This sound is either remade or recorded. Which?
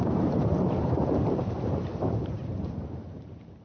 remade